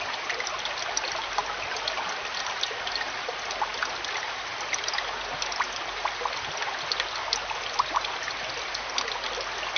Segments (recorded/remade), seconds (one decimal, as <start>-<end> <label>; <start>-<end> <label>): 0.0-9.8 recorded